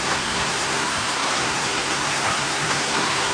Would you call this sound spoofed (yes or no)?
yes